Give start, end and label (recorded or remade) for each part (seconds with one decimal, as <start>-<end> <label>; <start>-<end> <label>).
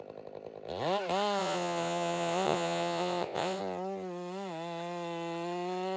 0.0-1.4 recorded; 1.4-3.6 remade; 3.6-6.0 recorded